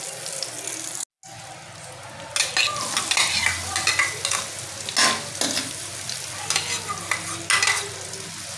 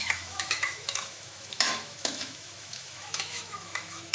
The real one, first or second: first